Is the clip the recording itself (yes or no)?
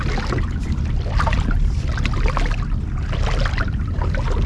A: yes